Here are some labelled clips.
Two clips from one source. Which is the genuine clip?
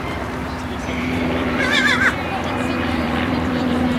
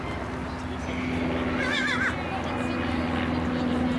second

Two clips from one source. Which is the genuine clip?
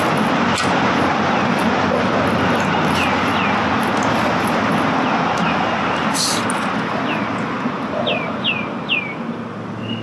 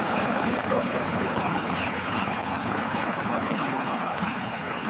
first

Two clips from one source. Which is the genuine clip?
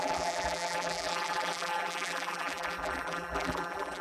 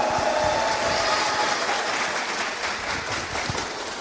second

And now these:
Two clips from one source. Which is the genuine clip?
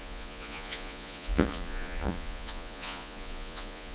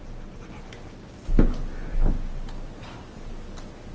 second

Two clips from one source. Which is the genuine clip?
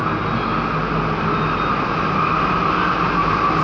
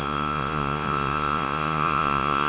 first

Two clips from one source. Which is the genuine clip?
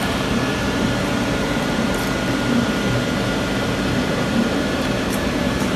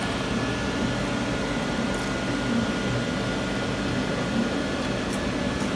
second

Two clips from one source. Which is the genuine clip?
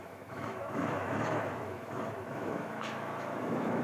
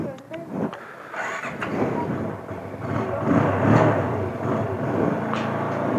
second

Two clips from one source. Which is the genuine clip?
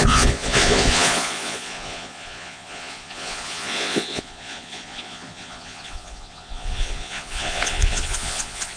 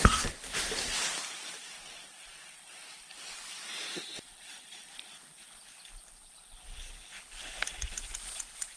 second